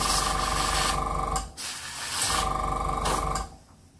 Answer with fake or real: real